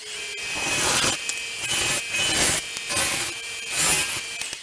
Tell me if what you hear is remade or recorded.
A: recorded